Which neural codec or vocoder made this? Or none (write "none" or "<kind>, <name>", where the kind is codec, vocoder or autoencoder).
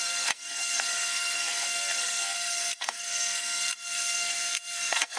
codec, SNAC